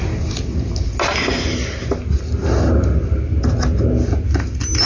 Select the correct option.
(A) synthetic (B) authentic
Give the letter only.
B